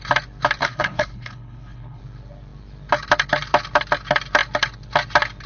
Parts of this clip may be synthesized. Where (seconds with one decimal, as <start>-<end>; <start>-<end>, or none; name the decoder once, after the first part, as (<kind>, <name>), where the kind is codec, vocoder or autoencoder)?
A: 0.6-2.0 (codec, HILCodec)